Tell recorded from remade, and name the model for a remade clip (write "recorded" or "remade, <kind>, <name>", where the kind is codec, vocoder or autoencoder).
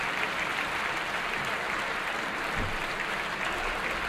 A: recorded